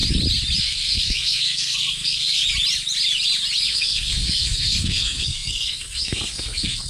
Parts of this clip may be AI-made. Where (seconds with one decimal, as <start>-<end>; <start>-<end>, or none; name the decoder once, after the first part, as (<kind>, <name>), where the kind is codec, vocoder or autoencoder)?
0.6-2.4 (codec, SNAC); 3.7-6.9